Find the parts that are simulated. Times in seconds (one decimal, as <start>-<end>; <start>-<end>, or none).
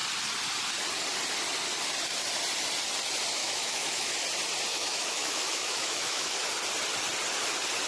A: 3.4-4.1; 4.7-6.5